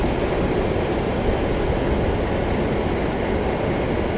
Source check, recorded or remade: recorded